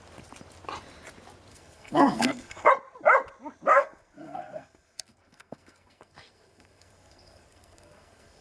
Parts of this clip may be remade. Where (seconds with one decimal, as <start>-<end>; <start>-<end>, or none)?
1.5-2.7; 3.7-8.4